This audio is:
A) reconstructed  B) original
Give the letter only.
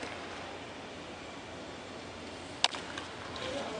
B